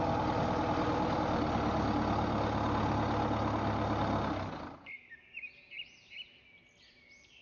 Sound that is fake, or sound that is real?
real